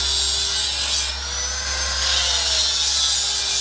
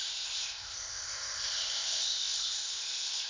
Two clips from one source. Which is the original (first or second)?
first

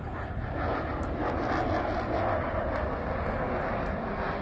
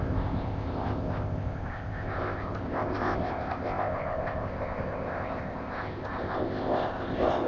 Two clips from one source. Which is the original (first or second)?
first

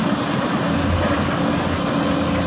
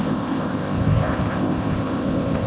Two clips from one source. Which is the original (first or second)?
first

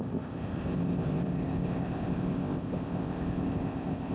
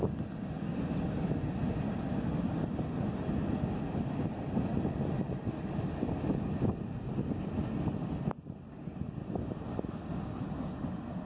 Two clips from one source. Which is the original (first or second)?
second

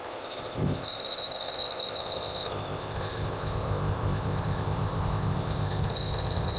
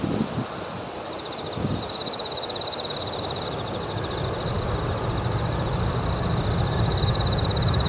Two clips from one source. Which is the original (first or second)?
second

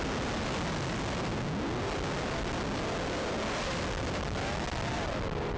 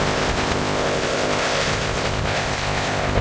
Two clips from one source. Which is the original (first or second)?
first